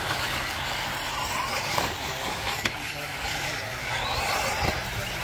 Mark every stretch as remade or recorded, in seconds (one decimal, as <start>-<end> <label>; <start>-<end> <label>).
0.0-0.9 remade; 0.9-1.5 recorded; 1.5-3.9 remade; 3.9-5.2 recorded